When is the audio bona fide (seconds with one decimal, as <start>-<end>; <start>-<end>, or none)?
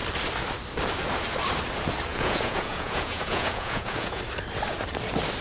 0.0-2.1; 4.2-5.4